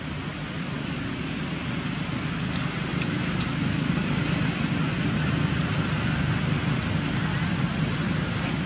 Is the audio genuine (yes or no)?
yes